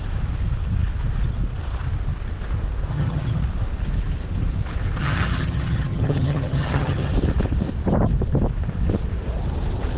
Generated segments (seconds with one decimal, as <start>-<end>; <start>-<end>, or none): 2.9-3.4; 5.0-7.1